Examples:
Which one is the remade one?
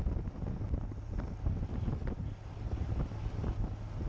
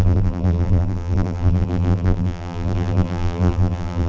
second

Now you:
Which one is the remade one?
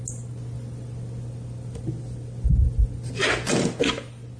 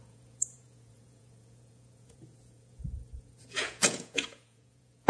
second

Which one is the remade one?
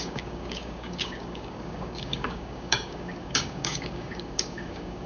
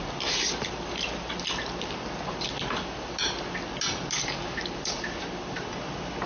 first